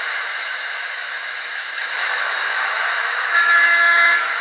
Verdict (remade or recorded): remade